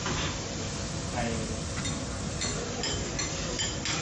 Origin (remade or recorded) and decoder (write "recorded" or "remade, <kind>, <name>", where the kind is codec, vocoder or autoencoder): recorded